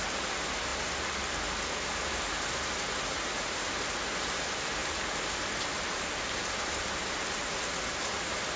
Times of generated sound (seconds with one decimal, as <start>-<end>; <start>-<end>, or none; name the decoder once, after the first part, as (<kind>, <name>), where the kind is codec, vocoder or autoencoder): none